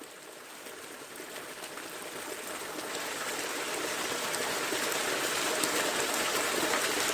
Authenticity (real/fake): real